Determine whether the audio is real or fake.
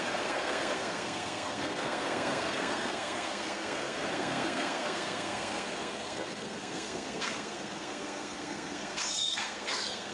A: fake